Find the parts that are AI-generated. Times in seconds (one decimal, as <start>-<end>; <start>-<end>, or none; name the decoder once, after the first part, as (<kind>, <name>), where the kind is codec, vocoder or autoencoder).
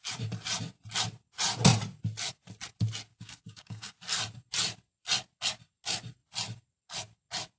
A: 3.1-4.0 (codec, DAC)